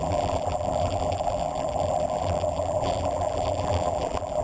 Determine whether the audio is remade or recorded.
remade